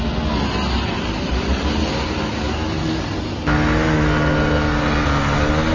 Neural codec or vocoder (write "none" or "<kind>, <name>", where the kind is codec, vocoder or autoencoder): none